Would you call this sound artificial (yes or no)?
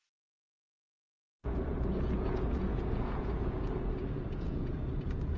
yes